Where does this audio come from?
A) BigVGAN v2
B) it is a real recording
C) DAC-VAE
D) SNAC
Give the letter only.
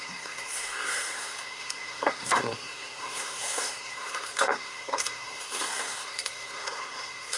D